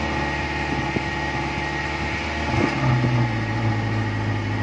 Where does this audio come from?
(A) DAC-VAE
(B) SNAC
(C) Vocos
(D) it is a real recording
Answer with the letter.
D